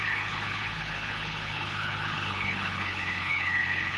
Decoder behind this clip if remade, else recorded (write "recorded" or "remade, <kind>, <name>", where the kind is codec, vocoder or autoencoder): remade, codec, HILCodec